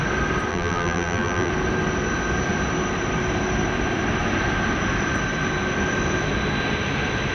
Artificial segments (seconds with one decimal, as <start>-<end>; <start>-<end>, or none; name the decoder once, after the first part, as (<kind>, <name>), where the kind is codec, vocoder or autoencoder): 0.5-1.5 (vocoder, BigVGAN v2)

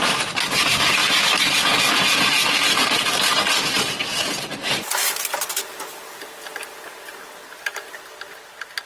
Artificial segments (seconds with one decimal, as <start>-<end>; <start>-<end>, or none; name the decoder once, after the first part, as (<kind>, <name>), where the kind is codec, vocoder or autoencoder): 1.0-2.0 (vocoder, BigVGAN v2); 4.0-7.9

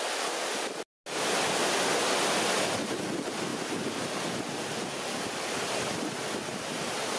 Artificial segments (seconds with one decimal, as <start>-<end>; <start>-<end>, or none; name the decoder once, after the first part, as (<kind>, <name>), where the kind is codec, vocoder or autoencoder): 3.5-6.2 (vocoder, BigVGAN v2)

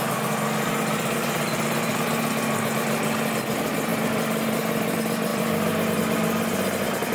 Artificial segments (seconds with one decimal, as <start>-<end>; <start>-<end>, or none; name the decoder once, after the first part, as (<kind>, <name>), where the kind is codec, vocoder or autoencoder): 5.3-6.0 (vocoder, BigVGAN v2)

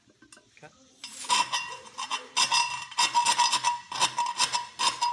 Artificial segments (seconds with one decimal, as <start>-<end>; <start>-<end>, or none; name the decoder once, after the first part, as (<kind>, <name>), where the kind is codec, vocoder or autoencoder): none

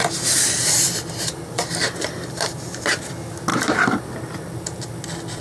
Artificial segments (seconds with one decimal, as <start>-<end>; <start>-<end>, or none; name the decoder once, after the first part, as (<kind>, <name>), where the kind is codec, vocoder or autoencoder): 0.6-3.1 (vocoder, BigVGAN v2); 3.5-4.1

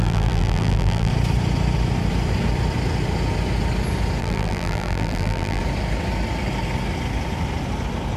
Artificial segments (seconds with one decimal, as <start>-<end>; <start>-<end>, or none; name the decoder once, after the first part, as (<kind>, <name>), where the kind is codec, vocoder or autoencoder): 0.0-1.1 (vocoder, BigVGAN v2); 4.2-5.6